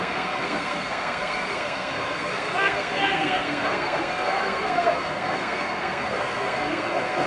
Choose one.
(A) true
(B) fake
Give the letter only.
B